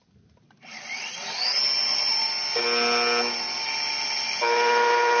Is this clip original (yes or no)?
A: yes